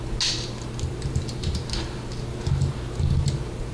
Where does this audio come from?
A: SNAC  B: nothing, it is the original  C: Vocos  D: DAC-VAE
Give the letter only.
B